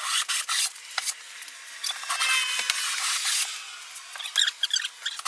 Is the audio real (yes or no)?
yes